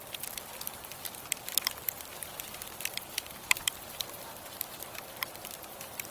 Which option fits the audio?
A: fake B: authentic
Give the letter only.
A